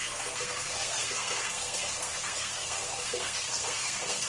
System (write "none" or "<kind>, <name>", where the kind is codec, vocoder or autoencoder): codec, SNAC